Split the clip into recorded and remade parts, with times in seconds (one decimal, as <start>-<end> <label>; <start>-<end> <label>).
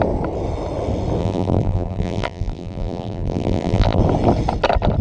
0.0-1.2 recorded; 1.2-4.0 remade; 4.0-5.0 recorded